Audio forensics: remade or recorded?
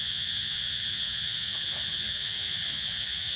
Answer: remade